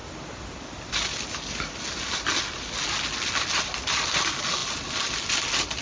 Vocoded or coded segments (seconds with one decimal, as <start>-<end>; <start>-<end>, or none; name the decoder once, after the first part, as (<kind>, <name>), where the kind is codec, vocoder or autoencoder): none